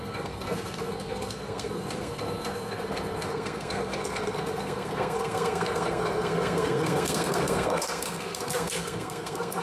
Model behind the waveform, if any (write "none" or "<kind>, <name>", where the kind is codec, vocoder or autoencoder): codec, SNAC